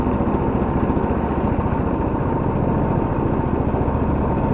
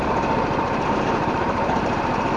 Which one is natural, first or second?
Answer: first